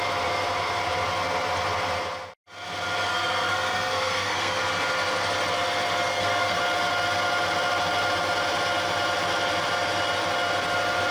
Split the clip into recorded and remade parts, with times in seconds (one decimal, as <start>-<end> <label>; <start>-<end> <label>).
0.0-3.1 recorded; 3.1-4.6 remade; 4.6-6.1 recorded; 6.1-6.6 remade; 6.6-11.1 recorded